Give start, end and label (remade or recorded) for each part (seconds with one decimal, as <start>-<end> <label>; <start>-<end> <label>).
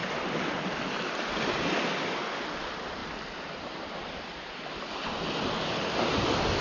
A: 0.0-6.6 recorded